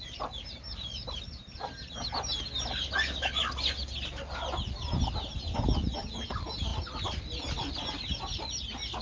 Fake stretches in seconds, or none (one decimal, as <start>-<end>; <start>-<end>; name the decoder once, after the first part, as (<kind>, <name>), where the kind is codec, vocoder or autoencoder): none